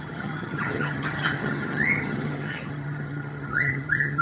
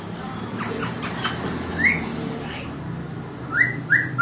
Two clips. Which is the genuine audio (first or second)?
second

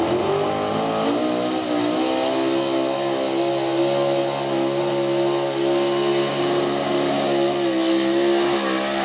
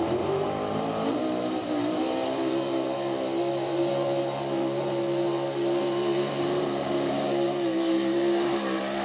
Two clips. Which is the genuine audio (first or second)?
first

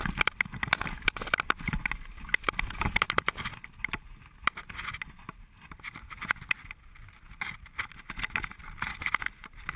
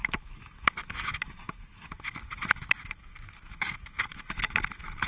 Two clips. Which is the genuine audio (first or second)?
first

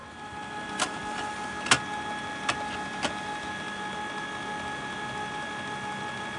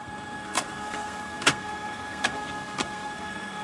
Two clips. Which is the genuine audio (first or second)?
first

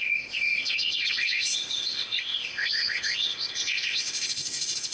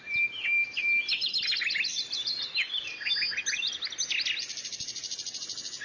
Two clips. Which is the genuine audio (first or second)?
second